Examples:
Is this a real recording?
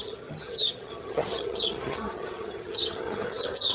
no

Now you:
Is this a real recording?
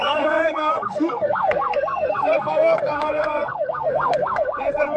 no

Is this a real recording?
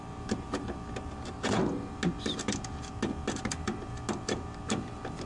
yes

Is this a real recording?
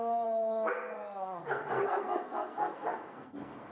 no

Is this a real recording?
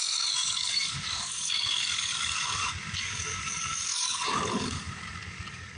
no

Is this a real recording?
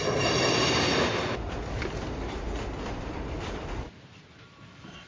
yes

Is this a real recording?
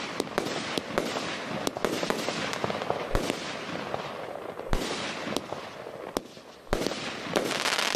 yes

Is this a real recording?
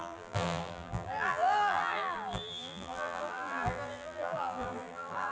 no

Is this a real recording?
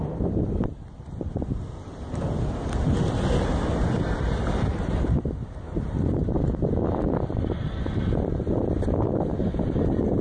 no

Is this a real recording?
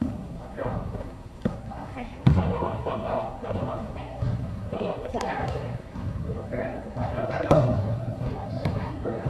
no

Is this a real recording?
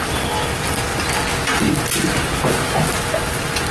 yes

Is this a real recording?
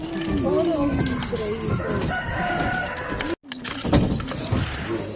yes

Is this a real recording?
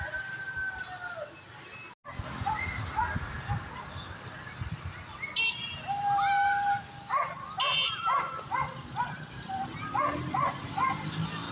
yes